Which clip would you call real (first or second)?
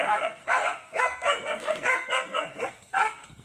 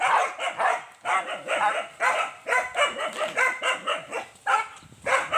second